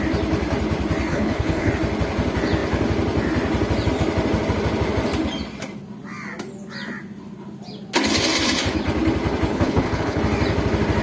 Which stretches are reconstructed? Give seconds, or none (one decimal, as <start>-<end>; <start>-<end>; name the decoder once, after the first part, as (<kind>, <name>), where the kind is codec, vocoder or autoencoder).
1.1-1.7 (codec, HILCodec); 9.5-10.2